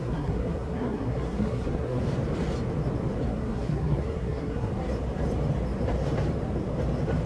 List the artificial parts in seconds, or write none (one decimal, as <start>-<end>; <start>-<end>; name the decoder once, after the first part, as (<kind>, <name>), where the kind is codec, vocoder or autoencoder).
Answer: 0.0-2.0 (codec, SNAC); 3.3-4.7